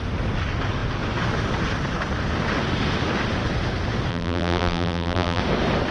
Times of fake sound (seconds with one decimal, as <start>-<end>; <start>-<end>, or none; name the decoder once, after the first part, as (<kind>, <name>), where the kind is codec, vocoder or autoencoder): 4.1-5.4 (vocoder, BigVGAN v2)